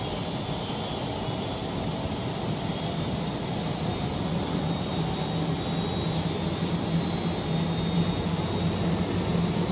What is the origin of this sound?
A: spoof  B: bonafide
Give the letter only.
B